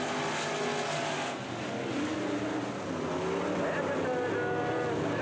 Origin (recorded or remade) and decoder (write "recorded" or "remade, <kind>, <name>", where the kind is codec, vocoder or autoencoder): recorded